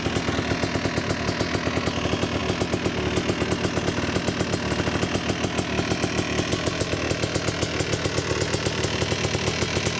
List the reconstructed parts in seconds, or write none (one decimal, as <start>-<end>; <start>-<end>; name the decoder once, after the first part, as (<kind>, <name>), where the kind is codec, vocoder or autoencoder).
none